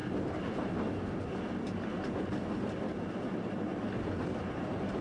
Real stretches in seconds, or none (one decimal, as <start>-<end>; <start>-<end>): 0.0-5.0